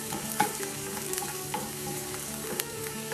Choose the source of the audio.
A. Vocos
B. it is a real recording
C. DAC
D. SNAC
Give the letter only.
C